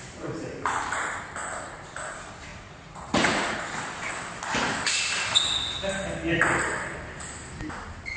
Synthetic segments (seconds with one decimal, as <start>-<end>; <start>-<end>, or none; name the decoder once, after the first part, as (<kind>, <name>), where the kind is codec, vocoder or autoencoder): 2.5-3.7 (vocoder, Vocos)